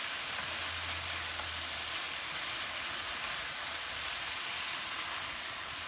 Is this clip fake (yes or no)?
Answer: no